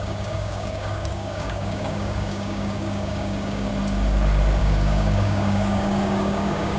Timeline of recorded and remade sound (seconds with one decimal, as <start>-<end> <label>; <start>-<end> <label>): 0.0-3.7 remade; 3.7-4.6 recorded; 4.6-6.8 remade